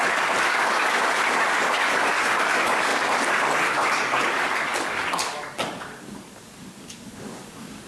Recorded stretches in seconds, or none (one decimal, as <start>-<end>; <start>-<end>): none